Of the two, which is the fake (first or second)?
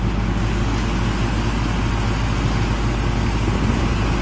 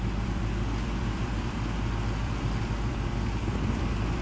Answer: second